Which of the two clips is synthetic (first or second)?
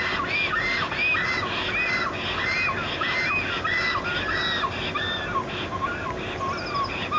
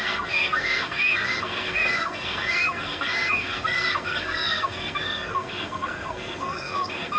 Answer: second